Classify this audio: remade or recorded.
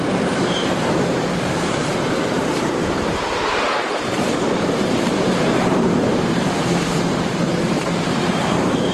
remade